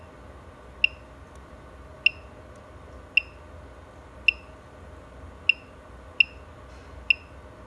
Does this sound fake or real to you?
real